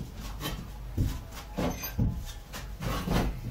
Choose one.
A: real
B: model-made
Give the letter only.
A